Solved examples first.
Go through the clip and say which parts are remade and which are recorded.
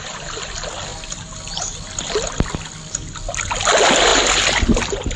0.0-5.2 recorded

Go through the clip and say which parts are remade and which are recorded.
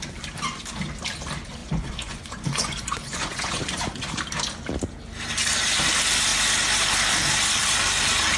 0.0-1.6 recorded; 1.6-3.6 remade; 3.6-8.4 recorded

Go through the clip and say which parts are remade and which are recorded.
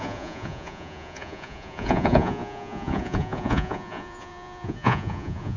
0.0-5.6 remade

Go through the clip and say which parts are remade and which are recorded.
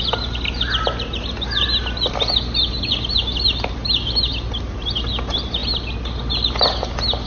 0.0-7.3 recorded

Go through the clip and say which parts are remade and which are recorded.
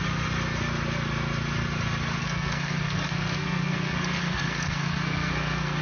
0.0-2.2 recorded; 2.2-5.8 remade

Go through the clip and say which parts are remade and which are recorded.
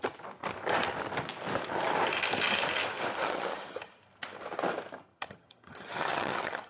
0.0-3.2 recorded; 3.2-4.0 remade; 4.0-5.1 recorded; 5.1-6.7 remade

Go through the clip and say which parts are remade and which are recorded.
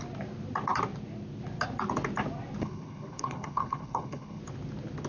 0.0-2.6 recorded; 2.6-4.4 remade; 4.4-5.1 recorded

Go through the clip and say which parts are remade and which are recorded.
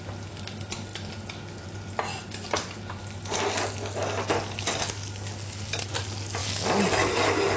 0.0-7.6 recorded